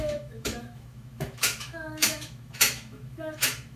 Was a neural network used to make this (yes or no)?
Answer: yes